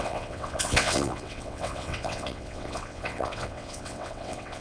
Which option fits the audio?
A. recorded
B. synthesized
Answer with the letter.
B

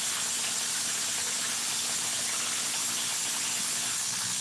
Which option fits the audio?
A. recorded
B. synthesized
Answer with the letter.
A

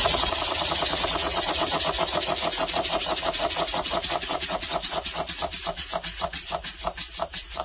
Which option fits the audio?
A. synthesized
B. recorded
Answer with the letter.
A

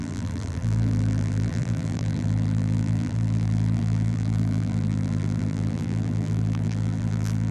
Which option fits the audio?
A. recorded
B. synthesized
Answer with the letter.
B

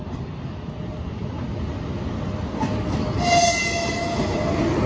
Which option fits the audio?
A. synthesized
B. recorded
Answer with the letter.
B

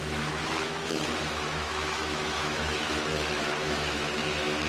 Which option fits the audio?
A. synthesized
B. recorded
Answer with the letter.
A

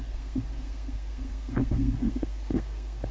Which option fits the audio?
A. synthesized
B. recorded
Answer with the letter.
A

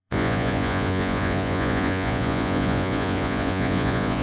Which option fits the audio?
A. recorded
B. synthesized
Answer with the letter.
B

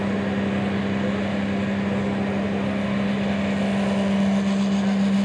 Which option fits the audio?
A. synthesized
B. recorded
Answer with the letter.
B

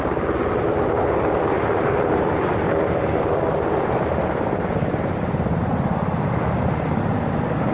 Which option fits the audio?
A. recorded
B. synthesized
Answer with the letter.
B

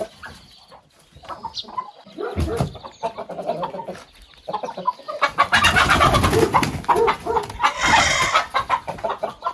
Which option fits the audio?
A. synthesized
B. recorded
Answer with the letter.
B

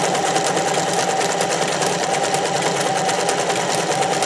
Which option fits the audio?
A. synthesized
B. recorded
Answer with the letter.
B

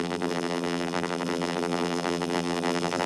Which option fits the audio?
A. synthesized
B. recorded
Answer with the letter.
A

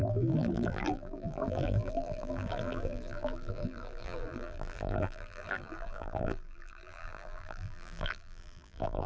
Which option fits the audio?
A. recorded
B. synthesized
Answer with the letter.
B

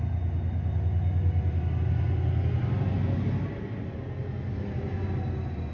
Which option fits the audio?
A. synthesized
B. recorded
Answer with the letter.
B